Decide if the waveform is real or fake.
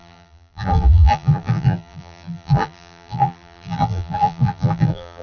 fake